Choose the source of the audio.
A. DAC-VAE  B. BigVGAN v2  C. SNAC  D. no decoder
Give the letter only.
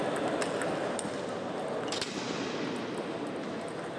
D